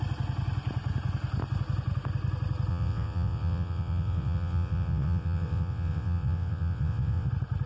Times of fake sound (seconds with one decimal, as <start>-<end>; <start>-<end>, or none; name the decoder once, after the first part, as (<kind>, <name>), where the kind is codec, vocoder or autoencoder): 2.7-7.3 (vocoder, WaveNeXt)